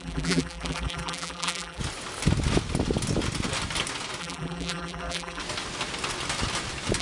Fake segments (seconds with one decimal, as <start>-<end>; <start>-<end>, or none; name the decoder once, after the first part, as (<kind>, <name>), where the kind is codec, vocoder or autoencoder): 0.0-1.8 (vocoder, BigVGAN v2); 4.2-5.4